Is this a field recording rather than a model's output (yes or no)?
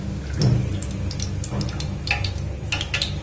yes